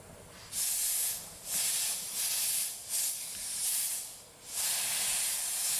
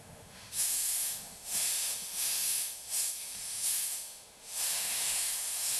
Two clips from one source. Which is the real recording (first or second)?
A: first